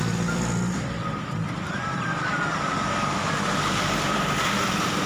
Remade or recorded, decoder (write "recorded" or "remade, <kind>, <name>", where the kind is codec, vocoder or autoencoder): remade, vocoder, BigVGAN v2